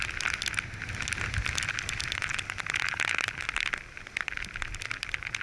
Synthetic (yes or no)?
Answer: no